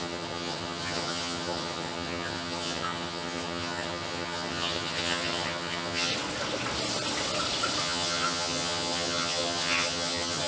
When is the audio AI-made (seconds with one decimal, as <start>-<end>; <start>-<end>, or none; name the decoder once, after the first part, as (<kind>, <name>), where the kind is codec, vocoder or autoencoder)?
0.0-6.1 (vocoder, HiFi-GAN); 7.8-10.5